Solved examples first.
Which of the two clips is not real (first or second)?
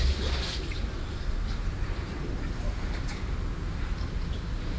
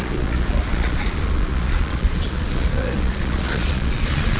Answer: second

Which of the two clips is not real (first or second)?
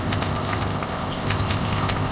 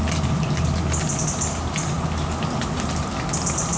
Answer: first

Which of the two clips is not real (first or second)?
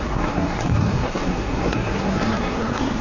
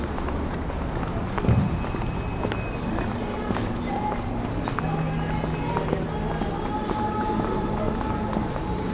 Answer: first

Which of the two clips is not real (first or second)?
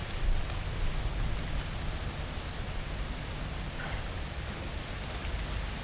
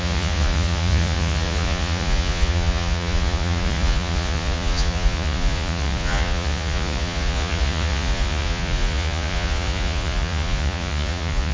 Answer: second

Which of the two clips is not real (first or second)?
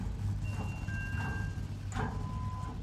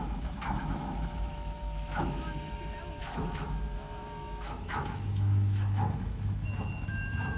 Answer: second